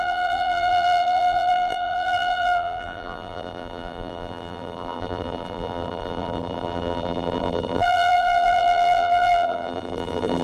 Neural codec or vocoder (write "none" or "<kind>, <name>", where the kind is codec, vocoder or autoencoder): vocoder, BigVGAN v2